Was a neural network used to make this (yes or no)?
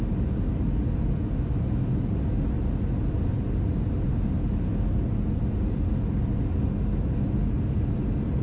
no